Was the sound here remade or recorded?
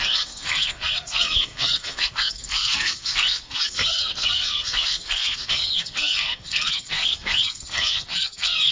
remade